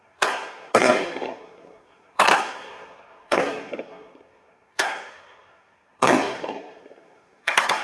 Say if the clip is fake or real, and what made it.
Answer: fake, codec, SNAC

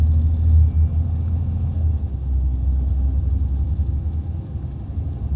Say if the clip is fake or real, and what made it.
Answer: real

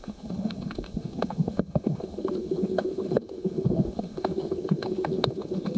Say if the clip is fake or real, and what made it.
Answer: fake, autoencoder, DAC-VAE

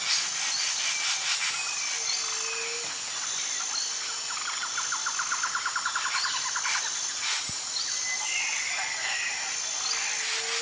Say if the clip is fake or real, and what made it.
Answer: real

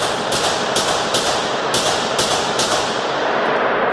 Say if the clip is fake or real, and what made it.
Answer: real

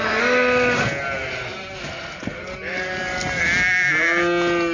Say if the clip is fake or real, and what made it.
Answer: real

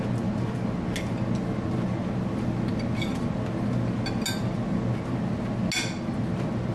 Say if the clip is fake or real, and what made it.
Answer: real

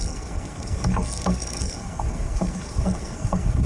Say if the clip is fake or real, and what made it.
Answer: fake, codec, SNAC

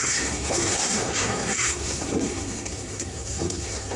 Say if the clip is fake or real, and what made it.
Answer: fake, codec, SNAC